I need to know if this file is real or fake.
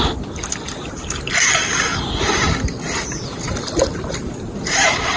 real